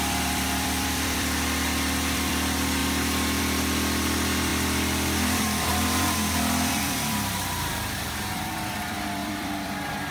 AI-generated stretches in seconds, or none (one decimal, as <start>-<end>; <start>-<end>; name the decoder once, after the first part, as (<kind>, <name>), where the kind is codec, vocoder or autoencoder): 0.0-2.8 (vocoder, BigVGAN v2); 3.4-10.1